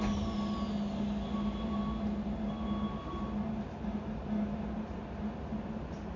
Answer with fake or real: real